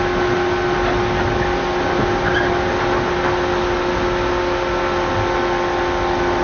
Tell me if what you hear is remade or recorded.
recorded